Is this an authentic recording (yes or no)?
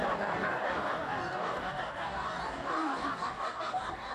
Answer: no